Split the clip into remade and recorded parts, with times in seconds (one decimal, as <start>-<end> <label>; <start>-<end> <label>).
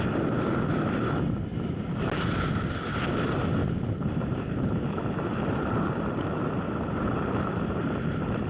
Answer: 0.0-3.6 recorded; 3.6-8.5 remade